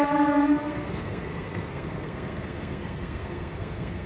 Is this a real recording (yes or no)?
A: no